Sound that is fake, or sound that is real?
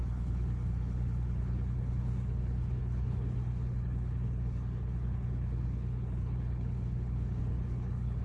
fake